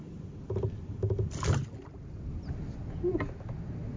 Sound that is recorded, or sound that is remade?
recorded